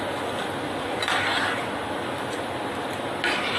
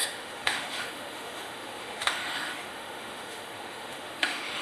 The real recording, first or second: first